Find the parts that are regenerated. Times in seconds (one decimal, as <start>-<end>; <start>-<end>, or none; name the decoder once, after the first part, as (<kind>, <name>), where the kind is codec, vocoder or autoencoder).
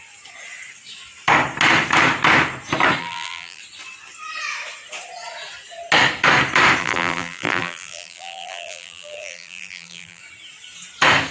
3.0-3.6 (vocoder, BigVGAN v2); 6.8-10.2